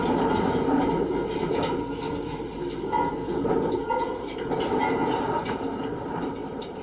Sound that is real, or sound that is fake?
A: real